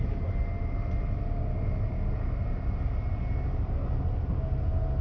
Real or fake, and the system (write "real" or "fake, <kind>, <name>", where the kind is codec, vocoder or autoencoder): real